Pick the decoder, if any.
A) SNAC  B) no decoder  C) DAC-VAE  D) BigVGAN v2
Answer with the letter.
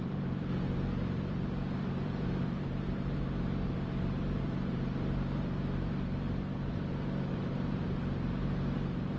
D